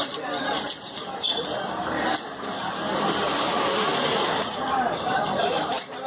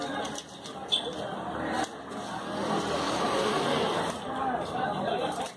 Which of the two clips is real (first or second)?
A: second